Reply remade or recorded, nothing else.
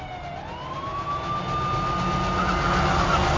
recorded